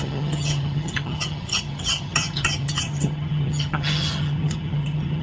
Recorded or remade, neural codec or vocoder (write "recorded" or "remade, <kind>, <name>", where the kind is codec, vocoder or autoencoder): remade, vocoder, HiFi-GAN